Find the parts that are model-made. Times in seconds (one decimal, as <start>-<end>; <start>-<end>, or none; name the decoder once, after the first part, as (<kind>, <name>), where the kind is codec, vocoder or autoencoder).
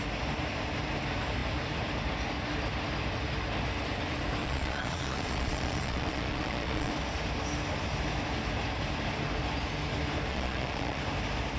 4.4-6.9 (vocoder, Vocos); 10.3-11.0